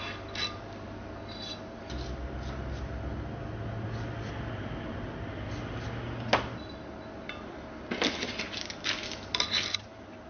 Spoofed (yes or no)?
no